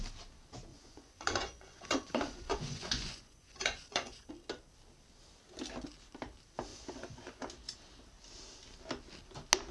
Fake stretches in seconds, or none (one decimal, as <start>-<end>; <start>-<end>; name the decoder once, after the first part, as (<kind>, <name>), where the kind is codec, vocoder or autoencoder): 0.7-4.3 (vocoder, Vocos); 6.7-7.4